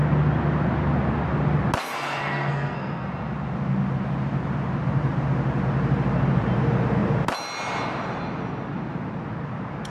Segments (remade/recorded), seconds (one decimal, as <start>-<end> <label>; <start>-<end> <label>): 0.0-1.8 recorded; 1.8-3.1 remade; 3.1-9.9 recorded